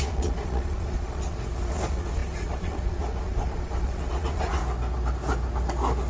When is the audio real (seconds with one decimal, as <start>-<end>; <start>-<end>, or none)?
4.6-6.1